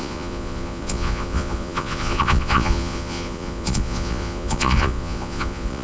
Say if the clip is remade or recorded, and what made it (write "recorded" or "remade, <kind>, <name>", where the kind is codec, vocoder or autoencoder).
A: remade, vocoder, Vocos